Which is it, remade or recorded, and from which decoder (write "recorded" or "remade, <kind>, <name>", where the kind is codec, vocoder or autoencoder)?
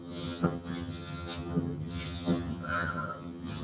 remade, vocoder, HiFi-GAN